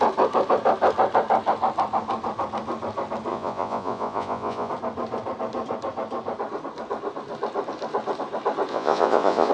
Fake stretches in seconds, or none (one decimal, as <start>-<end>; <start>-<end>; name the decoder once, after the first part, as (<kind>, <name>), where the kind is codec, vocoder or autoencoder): 3.3-4.7 (vocoder, Vocos); 8.7-9.5